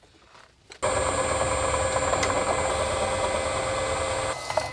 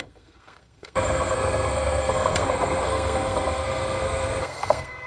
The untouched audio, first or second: first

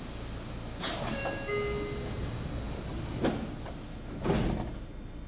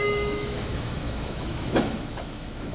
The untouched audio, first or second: first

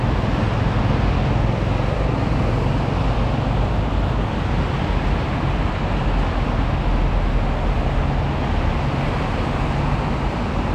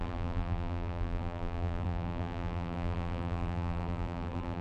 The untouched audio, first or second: first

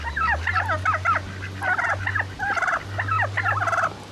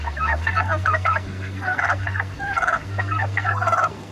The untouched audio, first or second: first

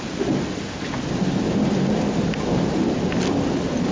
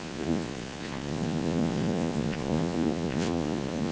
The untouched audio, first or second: first